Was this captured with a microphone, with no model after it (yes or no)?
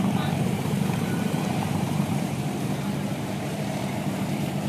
no